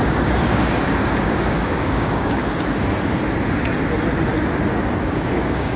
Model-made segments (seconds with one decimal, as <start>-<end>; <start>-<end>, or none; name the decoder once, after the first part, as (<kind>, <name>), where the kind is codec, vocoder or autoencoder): 0.0-2.4 (codec, DAC); 5.0-5.8